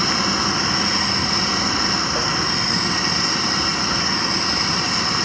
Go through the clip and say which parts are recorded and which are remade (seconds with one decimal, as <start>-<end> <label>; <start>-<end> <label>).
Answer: 0.0-5.2 recorded